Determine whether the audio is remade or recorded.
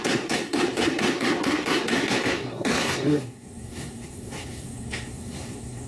remade